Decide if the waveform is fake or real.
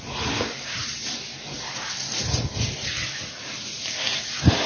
real